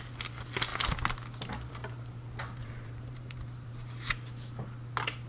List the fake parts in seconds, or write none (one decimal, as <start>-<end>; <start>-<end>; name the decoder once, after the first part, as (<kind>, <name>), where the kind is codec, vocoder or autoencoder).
2.6-3.7 (vocoder, BigVGAN v2)